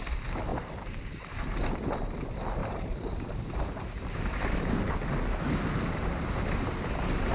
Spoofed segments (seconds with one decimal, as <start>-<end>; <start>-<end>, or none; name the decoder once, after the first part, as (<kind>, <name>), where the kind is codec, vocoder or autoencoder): 0.5-1.9 (vocoder, BigVGAN v2); 2.6-4.9